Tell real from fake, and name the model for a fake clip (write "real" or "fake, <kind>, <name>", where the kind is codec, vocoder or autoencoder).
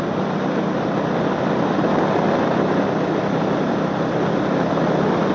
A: real